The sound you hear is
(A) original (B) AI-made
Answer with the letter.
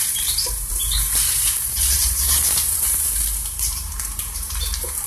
B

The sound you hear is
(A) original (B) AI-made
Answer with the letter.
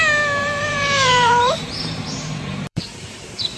B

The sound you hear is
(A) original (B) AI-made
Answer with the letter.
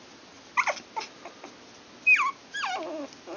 A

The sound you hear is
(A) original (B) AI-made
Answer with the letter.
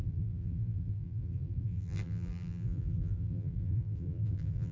B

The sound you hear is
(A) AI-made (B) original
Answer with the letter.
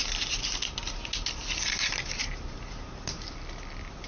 B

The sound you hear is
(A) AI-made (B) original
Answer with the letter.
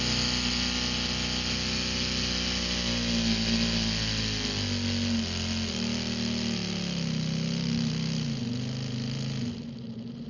B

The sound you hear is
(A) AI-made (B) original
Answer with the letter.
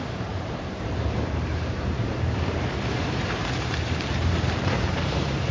A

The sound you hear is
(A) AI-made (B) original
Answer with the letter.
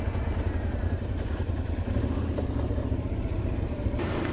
A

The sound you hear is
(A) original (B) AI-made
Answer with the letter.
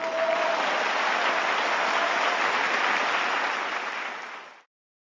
A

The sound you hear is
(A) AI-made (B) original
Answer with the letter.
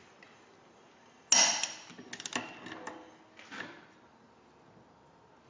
B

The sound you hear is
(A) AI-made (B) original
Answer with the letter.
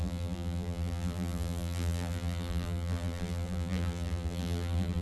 A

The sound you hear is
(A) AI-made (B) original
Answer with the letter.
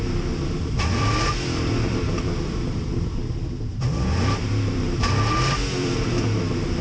A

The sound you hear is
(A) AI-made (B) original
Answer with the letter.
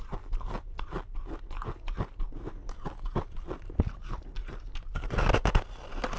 B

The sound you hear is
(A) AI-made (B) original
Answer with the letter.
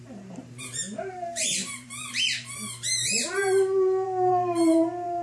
A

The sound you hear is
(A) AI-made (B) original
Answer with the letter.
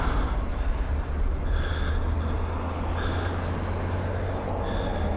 B